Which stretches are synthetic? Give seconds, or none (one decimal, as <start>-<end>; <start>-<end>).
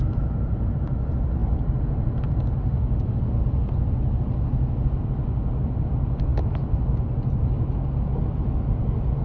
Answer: 2.6-3.2